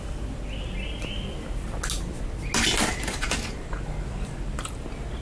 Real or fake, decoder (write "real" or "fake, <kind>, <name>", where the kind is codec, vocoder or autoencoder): real